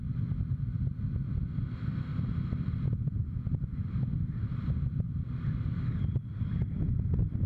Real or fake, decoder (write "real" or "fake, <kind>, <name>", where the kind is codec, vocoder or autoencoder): real